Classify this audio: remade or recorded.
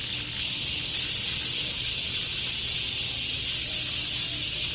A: recorded